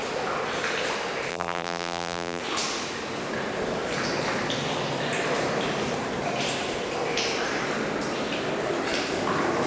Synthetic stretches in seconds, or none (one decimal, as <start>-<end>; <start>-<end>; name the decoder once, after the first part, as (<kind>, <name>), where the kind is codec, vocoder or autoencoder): 1.3-2.4 (vocoder, BigVGAN v2)